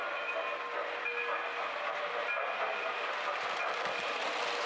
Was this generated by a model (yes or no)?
no